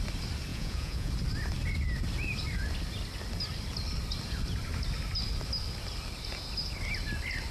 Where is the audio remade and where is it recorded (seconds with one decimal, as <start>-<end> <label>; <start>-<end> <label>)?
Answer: 0.0-0.5 recorded; 0.5-1.1 remade; 1.1-7.5 recorded